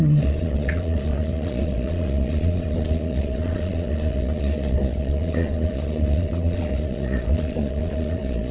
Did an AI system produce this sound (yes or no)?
yes